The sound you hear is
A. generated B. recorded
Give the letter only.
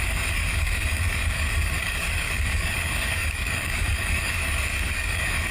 A